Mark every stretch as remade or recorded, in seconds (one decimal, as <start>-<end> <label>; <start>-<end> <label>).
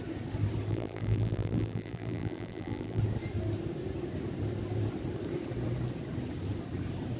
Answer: 0.0-0.7 recorded; 0.7-3.0 remade; 3.0-7.2 recorded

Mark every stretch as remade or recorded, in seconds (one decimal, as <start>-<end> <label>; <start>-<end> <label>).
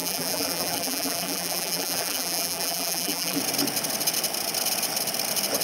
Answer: 0.0-3.4 remade; 3.4-5.6 recorded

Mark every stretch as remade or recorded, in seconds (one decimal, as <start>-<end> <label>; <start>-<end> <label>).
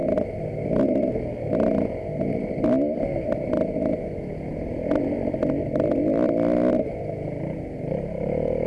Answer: 0.0-0.9 remade; 0.9-8.7 recorded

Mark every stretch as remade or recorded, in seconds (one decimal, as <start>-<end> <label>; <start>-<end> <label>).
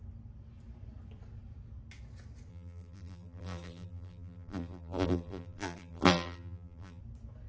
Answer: 0.0-2.5 recorded; 2.5-7.0 remade; 7.0-7.5 recorded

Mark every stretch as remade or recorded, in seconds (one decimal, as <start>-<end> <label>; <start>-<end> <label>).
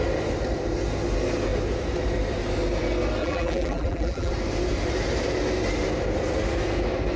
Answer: 0.0-3.2 recorded; 3.2-4.3 remade; 4.3-7.2 recorded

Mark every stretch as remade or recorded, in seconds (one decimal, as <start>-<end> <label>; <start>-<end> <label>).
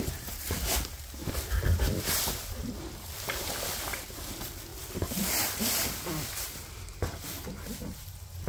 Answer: 0.0-8.5 remade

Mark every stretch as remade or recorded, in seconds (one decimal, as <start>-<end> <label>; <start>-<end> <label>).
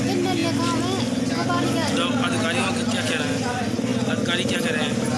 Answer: 0.0-5.2 recorded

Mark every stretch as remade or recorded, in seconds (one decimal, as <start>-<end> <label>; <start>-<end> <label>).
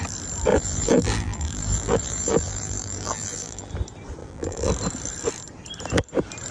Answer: 0.0-0.5 recorded; 0.5-3.7 remade; 3.7-4.2 recorded; 4.2-4.7 remade; 4.7-6.5 recorded